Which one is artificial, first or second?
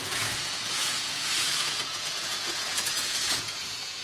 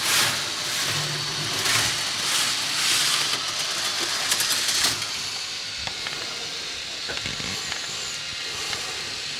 first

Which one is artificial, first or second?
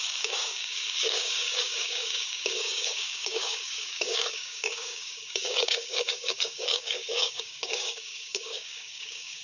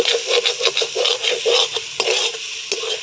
first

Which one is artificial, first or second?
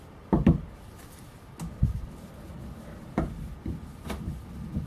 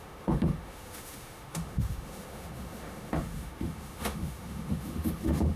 second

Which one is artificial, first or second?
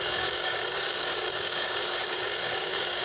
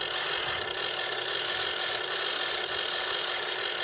first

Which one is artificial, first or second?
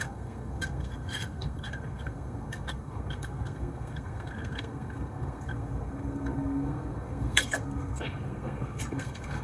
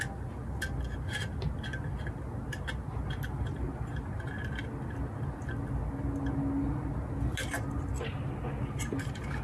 first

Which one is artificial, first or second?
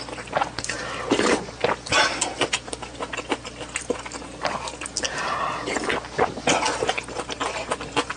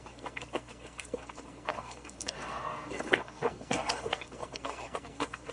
second